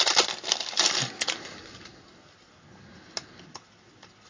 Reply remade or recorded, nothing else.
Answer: recorded